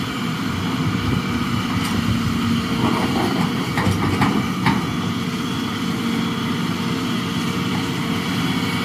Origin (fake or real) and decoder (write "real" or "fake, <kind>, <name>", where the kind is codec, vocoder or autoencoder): real